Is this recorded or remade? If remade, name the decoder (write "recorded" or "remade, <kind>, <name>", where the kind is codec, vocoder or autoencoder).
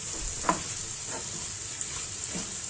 recorded